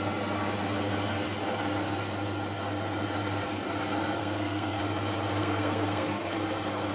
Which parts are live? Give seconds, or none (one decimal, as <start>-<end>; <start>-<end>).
0.0-4.2; 4.8-5.4